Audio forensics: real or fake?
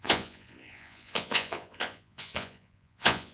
fake